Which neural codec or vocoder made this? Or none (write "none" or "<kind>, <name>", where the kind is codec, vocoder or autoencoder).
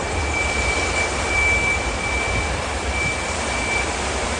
none